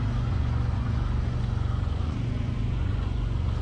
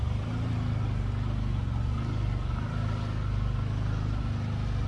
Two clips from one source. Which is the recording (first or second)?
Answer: second